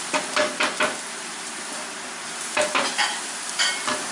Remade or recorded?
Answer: recorded